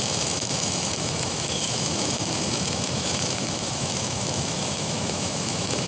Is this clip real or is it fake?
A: fake